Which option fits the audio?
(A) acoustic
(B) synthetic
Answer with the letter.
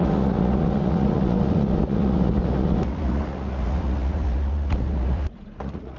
B